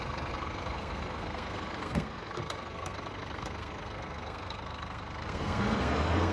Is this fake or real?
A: fake